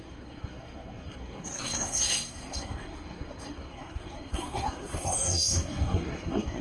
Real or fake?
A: fake